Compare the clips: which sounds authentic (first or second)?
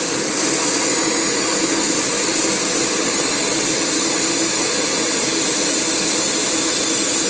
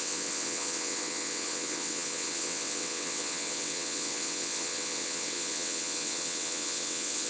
first